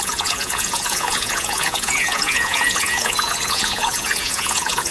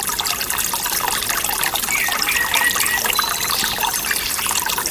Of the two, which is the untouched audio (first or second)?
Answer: second